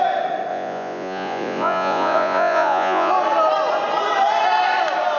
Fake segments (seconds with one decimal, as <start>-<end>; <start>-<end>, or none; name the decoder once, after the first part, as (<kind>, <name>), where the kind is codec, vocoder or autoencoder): 0.5-3.1 (vocoder, Vocos)